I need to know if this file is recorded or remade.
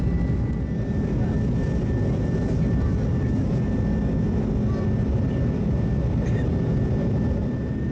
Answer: recorded